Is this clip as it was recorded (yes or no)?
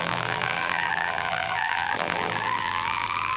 no